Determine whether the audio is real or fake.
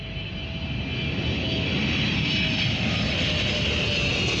real